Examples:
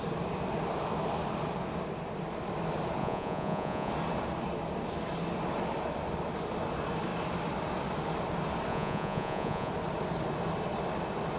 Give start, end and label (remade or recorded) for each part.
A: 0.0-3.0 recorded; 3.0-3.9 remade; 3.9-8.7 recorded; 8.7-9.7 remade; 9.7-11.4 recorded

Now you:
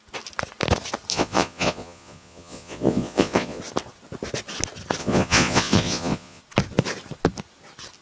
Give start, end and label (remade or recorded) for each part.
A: 0.0-1.1 recorded; 1.1-3.6 remade; 3.6-5.0 recorded; 5.0-6.4 remade; 6.4-8.0 recorded

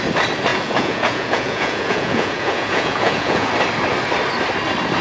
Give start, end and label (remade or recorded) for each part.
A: 0.0-0.5 recorded; 0.5-3.5 remade; 3.5-5.0 recorded

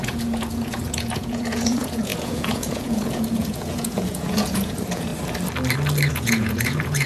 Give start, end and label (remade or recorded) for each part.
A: 0.0-5.1 remade; 5.1-6.1 recorded; 6.1-7.1 remade